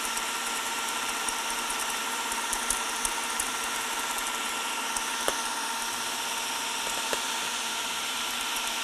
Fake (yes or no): yes